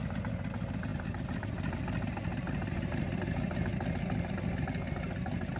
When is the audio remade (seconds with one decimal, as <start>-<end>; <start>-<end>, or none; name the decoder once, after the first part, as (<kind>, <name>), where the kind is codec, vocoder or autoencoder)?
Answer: 0.9-4.3 (vocoder, BigVGAN v2)